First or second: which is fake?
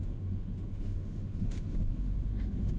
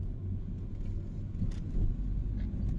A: first